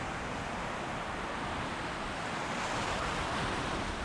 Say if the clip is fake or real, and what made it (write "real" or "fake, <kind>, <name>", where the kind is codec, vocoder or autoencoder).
real